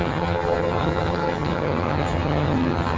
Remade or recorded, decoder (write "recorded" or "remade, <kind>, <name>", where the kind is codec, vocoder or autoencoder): remade, vocoder, HiFi-GAN